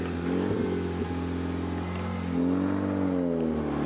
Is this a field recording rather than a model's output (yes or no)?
yes